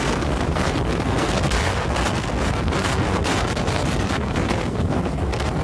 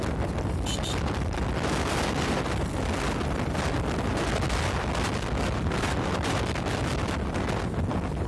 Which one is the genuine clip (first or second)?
second